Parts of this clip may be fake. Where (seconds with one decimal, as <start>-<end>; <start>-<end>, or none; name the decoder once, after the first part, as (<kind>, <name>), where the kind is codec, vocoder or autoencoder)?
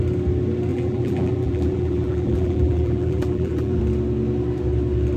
0.7-3.8 (vocoder, BigVGAN v2)